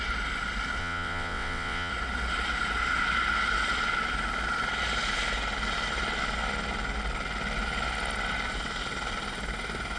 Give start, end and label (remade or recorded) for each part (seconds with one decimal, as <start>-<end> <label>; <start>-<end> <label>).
0.0-0.8 recorded; 0.8-1.9 remade; 1.9-10.0 recorded